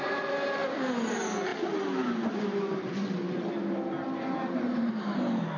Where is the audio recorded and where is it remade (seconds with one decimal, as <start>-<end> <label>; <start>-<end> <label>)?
0.0-5.6 recorded